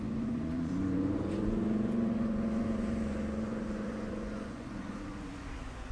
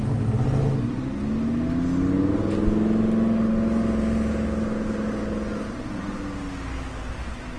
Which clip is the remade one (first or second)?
first